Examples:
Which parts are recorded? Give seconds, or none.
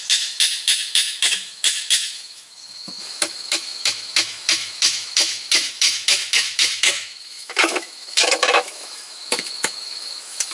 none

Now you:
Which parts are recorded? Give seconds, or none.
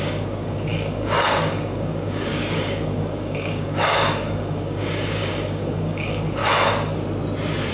6.4-7.7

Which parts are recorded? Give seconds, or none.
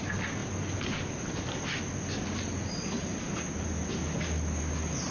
0.0-5.1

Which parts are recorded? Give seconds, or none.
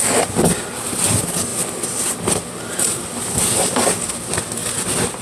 0.0-1.5; 3.6-4.6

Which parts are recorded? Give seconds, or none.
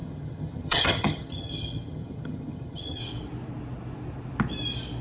3.0-5.0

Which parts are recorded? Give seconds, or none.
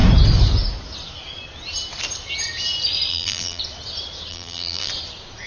0.0-3.1; 3.6-4.3; 4.9-5.5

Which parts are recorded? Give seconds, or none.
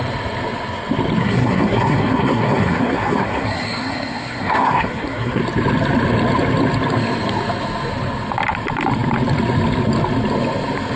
0.0-1.2; 5.4-10.9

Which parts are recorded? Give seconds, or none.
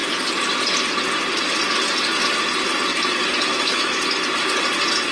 0.0-3.5; 4.0-5.1